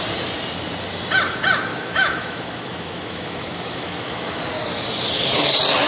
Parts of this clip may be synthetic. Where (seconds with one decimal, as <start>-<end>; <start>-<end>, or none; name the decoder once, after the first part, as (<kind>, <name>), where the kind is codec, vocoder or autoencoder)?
1.7-4.4 (autoencoder, DAC-VAE)